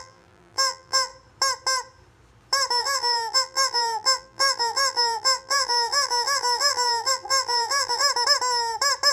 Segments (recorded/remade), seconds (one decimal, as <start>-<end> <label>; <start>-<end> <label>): 0.0-1.1 remade; 1.1-2.8 recorded; 2.8-8.0 remade; 8.0-9.1 recorded